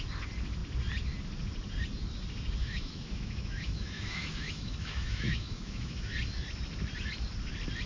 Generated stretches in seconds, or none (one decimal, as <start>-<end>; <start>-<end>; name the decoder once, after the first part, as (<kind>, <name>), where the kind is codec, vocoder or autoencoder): 2.6-6.1 (autoencoder, DAC-VAE)